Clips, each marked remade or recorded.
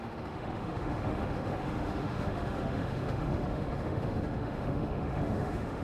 remade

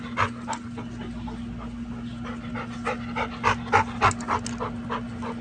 recorded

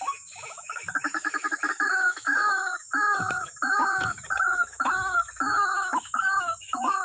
remade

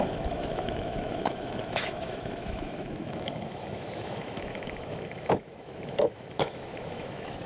remade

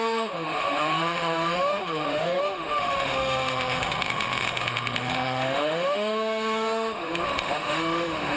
remade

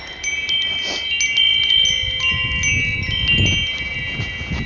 recorded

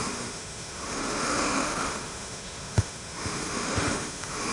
remade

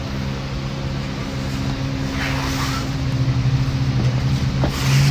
recorded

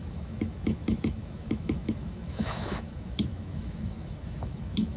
remade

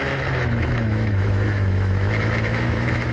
remade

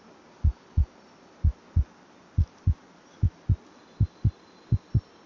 recorded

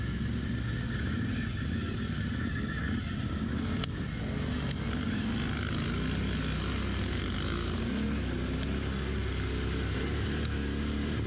recorded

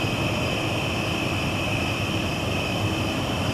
recorded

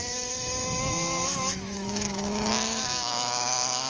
remade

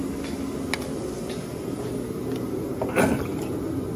recorded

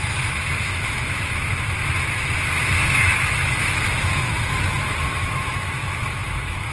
remade